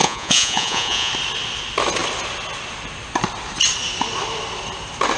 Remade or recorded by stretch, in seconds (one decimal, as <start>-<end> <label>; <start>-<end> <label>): 0.0-1.1 remade; 1.1-5.2 recorded